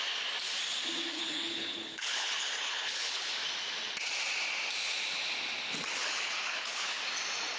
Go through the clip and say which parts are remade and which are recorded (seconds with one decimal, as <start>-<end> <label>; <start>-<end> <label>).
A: 0.0-1.1 recorded; 1.1-3.3 remade; 3.3-5.9 recorded; 5.9-7.0 remade; 7.0-7.6 recorded